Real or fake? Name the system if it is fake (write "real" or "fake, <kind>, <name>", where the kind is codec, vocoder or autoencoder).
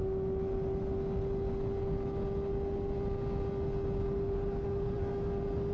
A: real